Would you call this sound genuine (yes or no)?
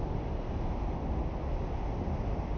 yes